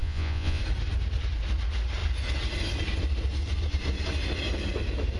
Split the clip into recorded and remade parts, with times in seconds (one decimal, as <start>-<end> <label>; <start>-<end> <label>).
0.0-0.6 remade; 0.6-5.2 recorded